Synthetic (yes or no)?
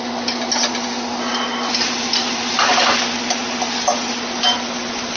no